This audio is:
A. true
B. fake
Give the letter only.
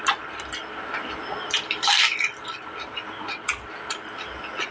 A